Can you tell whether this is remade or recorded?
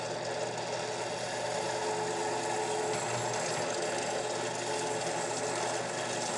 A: recorded